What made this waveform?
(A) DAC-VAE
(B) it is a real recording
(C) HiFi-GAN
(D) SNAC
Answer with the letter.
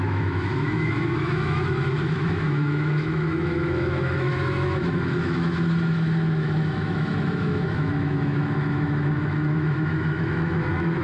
A